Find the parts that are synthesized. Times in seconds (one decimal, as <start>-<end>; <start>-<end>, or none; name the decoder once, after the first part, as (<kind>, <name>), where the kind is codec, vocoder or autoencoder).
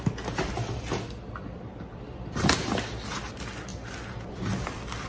none